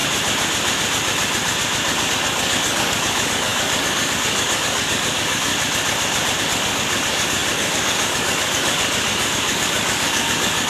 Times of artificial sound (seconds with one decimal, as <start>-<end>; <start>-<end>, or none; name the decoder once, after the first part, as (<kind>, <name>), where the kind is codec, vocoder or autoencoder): 2.0-5.5 (codec, DAC); 6.4-10.7